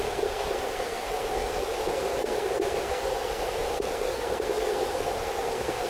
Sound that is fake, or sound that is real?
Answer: fake